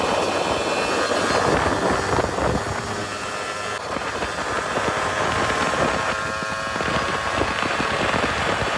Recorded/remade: recorded